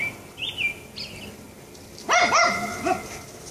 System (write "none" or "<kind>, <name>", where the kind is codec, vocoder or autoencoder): none